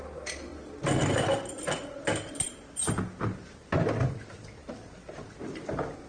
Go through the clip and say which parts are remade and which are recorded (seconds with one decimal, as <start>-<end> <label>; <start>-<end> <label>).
0.0-6.1 recorded

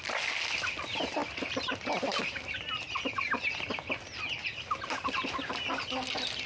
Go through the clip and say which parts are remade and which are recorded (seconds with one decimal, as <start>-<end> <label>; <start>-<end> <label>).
0.0-6.5 recorded

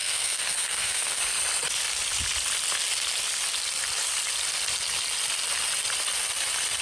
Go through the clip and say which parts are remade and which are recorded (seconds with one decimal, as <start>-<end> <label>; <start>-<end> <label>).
0.0-1.2 remade; 1.2-6.8 recorded

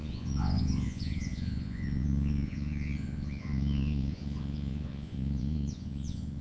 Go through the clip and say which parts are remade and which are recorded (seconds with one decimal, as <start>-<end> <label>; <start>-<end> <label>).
0.0-6.4 remade

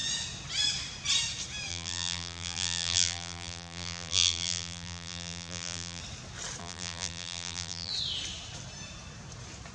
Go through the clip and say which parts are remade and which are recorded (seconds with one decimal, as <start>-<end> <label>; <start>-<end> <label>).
0.0-1.7 recorded; 1.7-6.0 remade; 6.0-6.6 recorded; 6.6-7.9 remade; 7.9-9.7 recorded

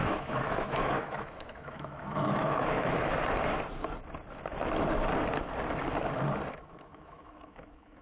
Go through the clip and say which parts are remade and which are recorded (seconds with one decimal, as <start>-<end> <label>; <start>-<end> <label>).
0.0-3.1 remade; 3.1-6.5 recorded; 6.5-8.0 remade